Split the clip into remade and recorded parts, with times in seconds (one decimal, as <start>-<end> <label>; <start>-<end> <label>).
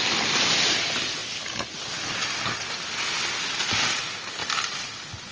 0.0-5.3 recorded